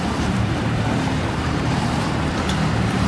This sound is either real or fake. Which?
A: fake